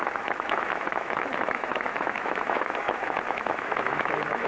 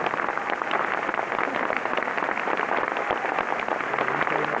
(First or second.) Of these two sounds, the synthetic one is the first